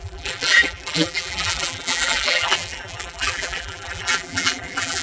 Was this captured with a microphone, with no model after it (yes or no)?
no